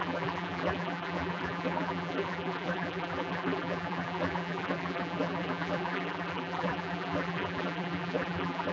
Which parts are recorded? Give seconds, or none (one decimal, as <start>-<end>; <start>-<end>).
none